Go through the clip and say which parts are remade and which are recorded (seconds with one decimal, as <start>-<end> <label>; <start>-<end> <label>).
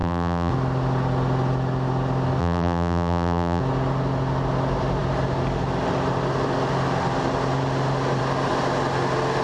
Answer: 0.0-0.5 remade; 0.5-2.4 recorded; 2.4-3.6 remade; 3.6-9.4 recorded